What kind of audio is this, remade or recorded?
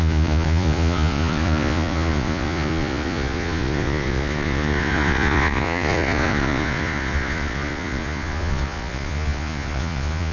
remade